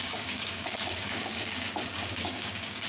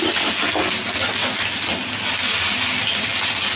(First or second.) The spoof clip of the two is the first